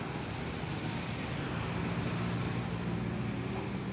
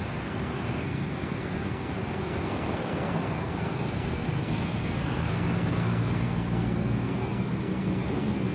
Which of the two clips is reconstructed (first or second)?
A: second